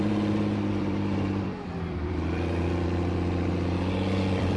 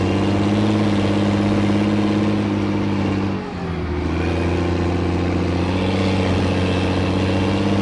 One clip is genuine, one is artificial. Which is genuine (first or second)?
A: second